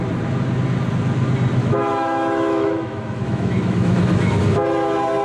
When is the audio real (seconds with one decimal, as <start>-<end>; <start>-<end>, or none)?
0.0-1.6; 4.4-5.2